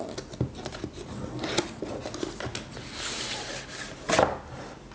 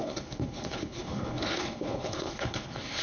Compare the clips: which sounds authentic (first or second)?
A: first